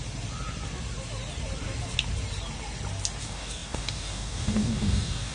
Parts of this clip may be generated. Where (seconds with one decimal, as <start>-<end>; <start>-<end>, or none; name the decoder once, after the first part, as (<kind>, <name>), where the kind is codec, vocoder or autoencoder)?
3.2-5.3 (codec, DAC)